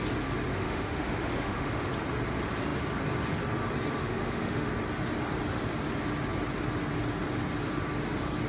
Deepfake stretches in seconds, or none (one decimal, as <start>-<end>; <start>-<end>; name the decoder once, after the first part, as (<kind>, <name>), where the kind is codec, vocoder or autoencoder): 0.5-1.9 (autoencoder, DAC-VAE); 4.0-4.7